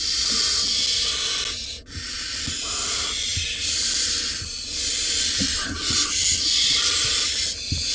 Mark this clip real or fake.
real